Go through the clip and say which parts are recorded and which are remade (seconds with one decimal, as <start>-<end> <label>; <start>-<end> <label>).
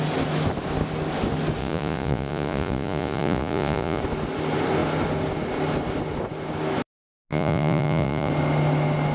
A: 0.0-1.6 recorded; 1.6-4.0 remade; 4.0-7.3 recorded; 7.3-8.3 remade; 8.3-9.1 recorded